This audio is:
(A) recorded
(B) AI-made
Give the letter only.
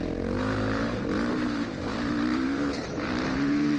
B